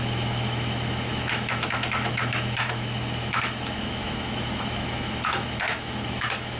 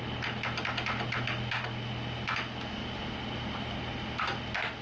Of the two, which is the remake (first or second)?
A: first